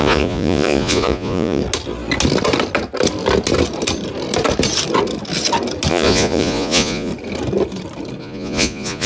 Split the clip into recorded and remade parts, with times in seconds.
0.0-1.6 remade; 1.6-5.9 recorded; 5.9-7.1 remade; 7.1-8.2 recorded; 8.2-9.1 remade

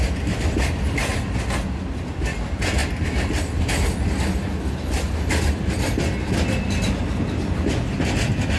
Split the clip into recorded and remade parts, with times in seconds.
0.0-8.6 recorded

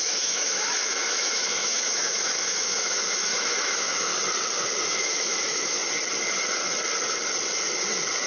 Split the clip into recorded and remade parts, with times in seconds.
0.0-4.1 remade; 4.1-4.8 recorded; 4.8-5.8 remade; 5.8-8.3 recorded

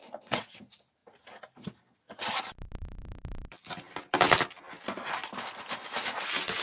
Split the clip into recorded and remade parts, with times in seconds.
0.0-0.6 remade; 0.6-6.6 recorded

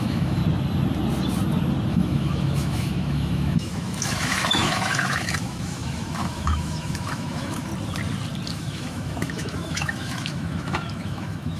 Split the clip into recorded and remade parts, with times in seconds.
0.0-0.4 remade; 0.4-1.9 recorded; 1.9-7.7 remade; 7.7-8.5 recorded; 8.5-11.6 remade

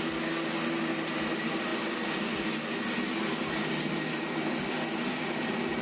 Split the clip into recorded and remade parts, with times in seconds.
0.0-5.8 recorded

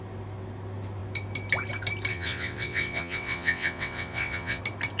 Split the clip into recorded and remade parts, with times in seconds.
0.0-2.1 recorded; 2.1-4.6 remade; 4.6-5.0 recorded